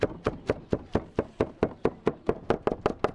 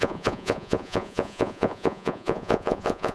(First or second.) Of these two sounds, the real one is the first